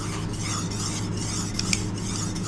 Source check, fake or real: real